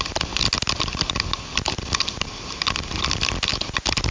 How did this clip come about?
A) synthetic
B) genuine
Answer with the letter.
B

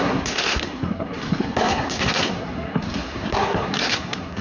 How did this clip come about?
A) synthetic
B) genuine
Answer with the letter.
A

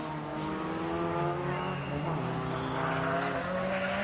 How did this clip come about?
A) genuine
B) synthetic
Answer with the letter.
A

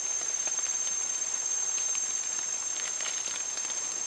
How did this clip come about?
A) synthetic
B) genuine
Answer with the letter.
B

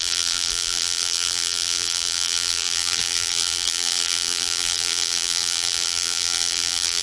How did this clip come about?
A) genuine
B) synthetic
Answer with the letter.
B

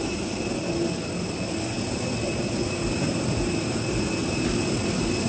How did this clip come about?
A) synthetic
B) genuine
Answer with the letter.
B